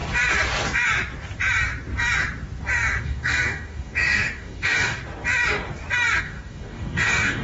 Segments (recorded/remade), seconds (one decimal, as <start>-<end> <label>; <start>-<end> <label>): 0.0-3.0 recorded; 3.0-5.0 remade; 5.0-6.2 recorded; 6.2-7.4 remade